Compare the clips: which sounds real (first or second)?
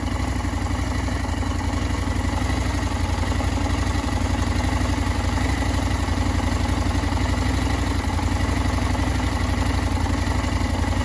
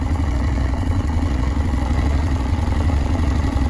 first